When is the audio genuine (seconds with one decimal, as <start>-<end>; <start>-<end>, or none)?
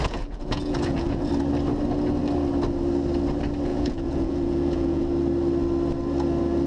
1.3-3.7; 5.0-6.7